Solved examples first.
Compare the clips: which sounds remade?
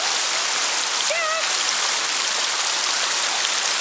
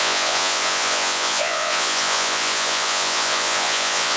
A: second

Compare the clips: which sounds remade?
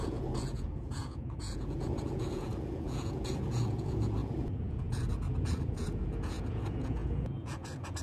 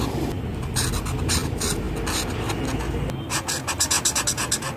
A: first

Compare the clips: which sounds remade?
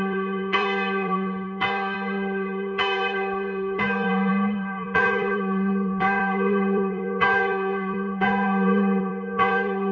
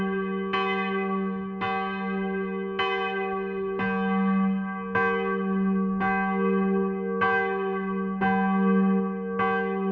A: first